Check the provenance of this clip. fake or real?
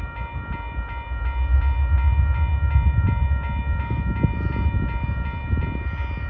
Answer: real